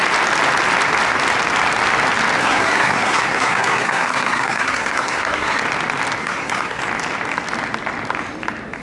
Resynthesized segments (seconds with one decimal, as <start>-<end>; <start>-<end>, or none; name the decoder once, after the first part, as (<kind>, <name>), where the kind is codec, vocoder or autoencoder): 2.4-5.6 (codec, SNAC); 6.2-6.8